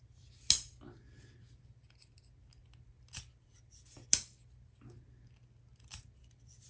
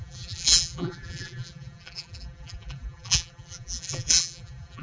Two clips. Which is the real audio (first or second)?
first